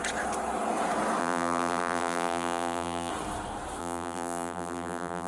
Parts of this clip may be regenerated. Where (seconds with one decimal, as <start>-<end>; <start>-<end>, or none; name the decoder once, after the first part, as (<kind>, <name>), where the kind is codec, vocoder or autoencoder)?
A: 1.2-3.1 (vocoder, BigVGAN v2); 3.8-5.3